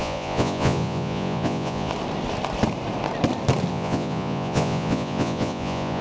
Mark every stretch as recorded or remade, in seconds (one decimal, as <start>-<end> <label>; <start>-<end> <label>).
0.0-1.9 remade; 1.9-3.7 recorded; 3.7-6.0 remade